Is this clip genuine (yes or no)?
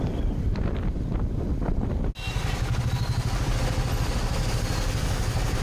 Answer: yes